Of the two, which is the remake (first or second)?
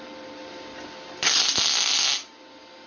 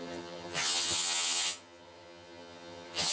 second